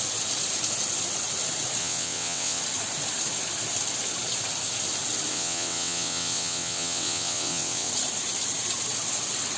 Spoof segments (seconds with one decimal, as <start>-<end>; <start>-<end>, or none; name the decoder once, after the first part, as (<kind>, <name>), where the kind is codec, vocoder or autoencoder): 1.8-2.6 (vocoder, WaveNeXt); 5.3-7.9